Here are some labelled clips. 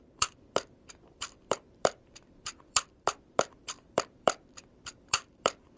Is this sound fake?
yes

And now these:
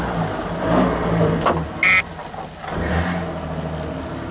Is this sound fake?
no